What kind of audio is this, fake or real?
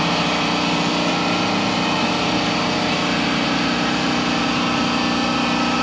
real